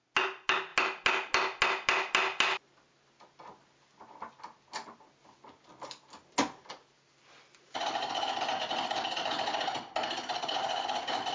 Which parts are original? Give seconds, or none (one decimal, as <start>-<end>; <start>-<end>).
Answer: 0.0-11.3